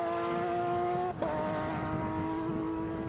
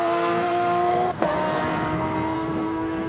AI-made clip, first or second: second